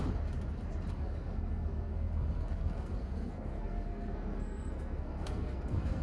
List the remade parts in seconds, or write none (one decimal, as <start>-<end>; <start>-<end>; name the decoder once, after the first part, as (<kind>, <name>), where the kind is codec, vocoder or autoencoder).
0.9-6.0 (codec, SNAC)